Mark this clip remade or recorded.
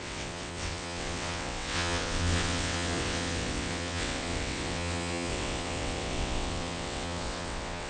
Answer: remade